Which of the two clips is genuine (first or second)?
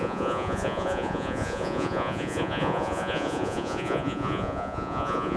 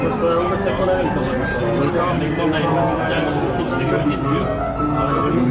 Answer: second